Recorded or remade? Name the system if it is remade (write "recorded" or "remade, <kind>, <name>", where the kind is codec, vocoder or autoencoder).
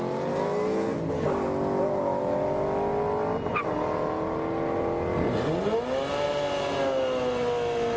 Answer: recorded